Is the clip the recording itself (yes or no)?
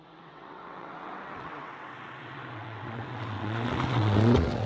no